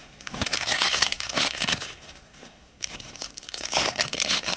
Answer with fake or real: fake